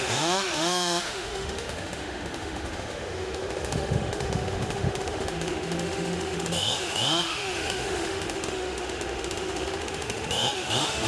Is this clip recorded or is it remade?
remade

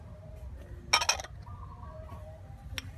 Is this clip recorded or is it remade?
recorded